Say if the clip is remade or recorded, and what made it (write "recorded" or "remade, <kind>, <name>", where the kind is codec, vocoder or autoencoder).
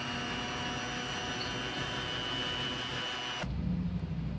recorded